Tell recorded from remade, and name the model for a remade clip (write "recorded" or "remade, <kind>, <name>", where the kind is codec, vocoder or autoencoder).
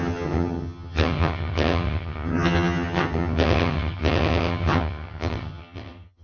remade, vocoder, HiFi-GAN